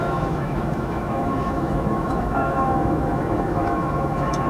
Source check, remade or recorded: remade